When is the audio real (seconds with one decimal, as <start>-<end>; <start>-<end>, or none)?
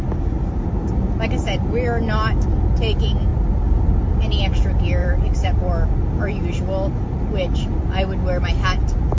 0.0-3.3; 3.9-5.0; 5.6-9.2